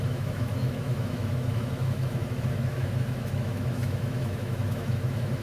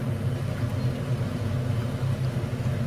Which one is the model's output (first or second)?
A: first